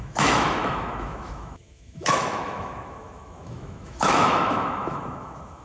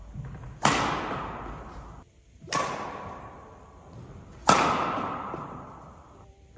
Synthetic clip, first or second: first